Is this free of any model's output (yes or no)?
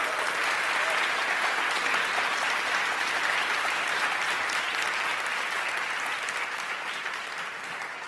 yes